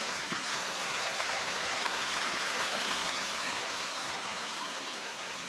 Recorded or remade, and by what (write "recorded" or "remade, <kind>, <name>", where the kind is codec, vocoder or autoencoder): remade, codec, SNAC